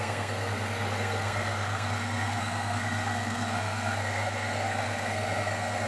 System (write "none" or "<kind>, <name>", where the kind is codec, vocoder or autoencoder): codec, SNAC